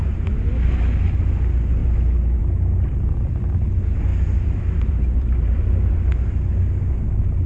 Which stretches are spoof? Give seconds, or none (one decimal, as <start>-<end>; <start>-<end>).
1.8-2.4; 4.1-6.0